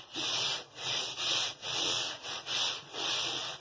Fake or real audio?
fake